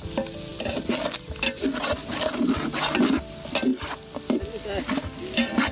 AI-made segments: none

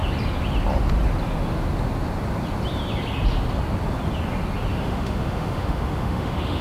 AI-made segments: 4.7-6.6 (autoencoder, DAC-VAE)

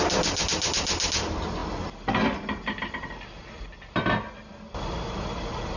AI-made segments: none

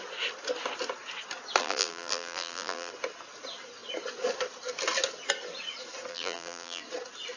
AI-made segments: 1.6-2.9 (vocoder, BigVGAN v2); 6.1-6.8